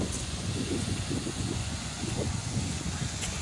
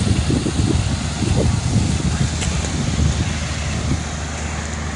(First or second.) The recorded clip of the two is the second